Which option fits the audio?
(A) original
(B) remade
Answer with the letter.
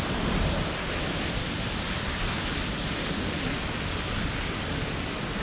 A